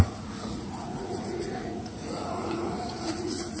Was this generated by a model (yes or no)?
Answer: yes